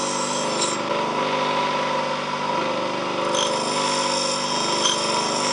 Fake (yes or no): no